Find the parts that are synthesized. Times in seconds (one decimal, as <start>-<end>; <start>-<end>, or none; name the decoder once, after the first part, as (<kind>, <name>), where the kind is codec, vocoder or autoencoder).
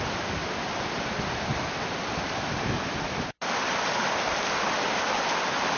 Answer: none